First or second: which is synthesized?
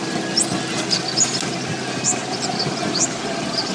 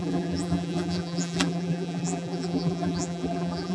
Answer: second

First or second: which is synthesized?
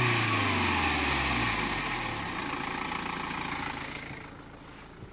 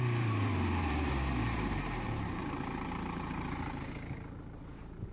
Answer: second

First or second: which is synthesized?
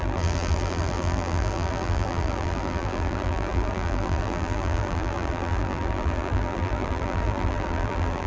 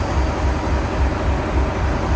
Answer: first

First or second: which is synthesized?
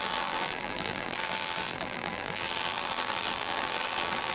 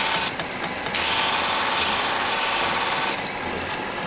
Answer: first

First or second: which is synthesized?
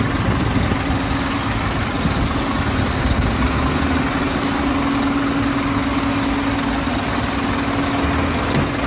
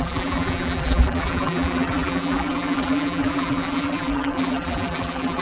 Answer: second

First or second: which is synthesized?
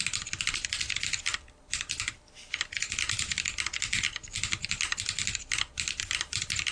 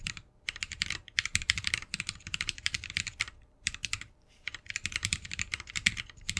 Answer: second